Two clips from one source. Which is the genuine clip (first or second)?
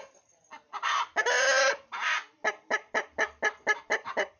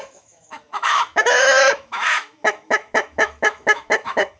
first